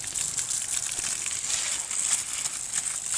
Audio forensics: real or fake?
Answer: real